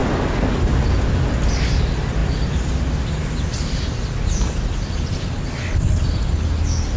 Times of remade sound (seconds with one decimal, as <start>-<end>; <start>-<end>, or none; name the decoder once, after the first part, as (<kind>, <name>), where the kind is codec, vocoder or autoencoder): none